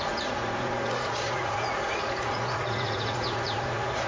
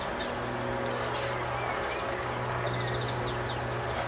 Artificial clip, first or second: first